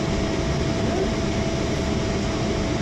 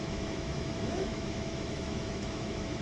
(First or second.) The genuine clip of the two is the first